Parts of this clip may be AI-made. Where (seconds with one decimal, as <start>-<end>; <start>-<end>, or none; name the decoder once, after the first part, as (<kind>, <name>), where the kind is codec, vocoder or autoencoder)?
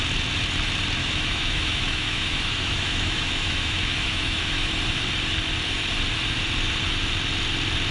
1.0-4.7 (autoencoder, DAC-VAE)